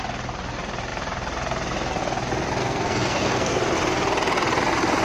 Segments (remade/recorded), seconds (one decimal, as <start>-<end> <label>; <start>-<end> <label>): 0.0-2.6 recorded; 2.6-3.6 remade; 3.6-5.0 recorded